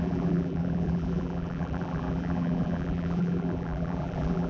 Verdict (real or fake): fake